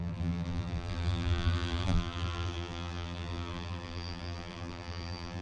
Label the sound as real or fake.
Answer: fake